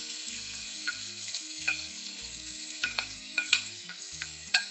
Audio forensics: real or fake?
fake